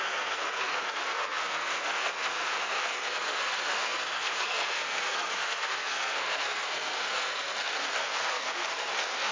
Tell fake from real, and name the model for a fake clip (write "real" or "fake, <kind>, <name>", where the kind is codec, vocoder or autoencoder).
fake, codec, SNAC